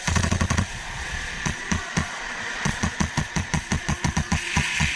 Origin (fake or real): fake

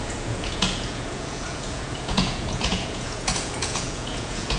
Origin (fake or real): fake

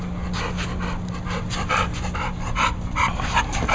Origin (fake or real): real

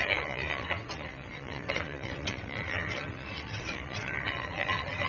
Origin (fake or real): fake